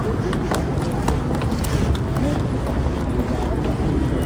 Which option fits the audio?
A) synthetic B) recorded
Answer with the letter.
B